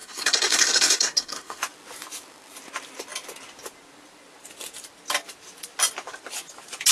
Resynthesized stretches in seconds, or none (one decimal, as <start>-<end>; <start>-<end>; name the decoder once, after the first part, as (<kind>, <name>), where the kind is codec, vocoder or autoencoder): 0.0-1.6 (codec, SNAC)